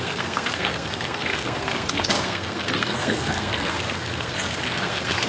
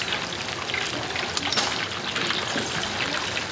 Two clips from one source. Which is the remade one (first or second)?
first